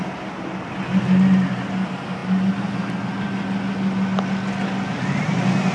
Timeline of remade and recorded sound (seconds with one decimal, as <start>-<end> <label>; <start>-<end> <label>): 0.0-5.7 recorded

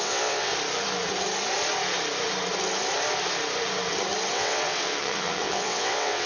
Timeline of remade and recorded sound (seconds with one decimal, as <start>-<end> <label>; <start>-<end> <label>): 0.0-0.5 remade; 0.5-4.3 recorded; 4.3-6.3 remade

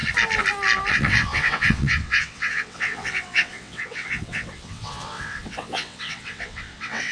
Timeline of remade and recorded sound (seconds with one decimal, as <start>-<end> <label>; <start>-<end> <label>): 0.0-0.9 recorded; 0.9-7.1 remade